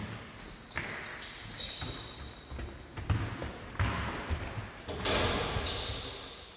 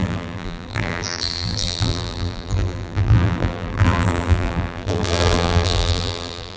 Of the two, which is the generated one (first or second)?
second